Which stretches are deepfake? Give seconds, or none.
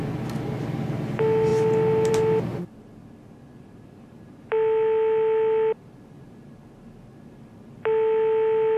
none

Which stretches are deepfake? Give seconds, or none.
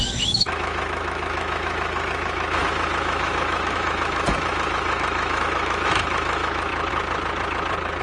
0.0-6.7 (autoencoder, DAC-VAE)